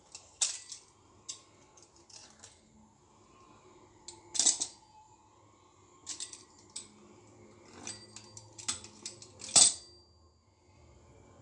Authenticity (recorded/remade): recorded